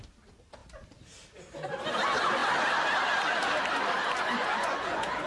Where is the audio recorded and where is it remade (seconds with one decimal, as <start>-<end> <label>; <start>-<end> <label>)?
0.0-4.4 recorded; 4.4-5.3 remade